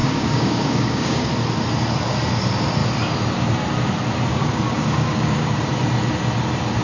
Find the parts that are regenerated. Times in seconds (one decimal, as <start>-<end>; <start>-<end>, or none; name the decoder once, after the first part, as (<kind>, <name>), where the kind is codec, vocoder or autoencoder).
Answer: 0.0-1.3 (codec, DAC); 4.3-5.5